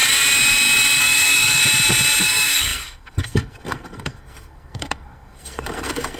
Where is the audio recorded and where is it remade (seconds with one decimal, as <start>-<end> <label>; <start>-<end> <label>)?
0.0-1.0 recorded; 1.0-1.6 remade; 1.6-2.2 recorded; 2.2-6.2 remade